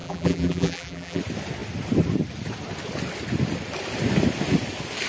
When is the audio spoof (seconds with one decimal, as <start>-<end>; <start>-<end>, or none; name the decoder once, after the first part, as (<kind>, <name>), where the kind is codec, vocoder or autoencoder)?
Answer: 0.0-1.2 (vocoder, BigVGAN v2)